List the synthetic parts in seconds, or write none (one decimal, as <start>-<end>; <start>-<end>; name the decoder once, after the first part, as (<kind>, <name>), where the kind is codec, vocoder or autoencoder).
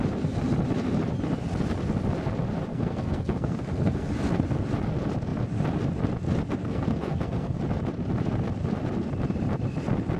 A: 2.7-4.1 (codec, SNAC); 6.6-7.6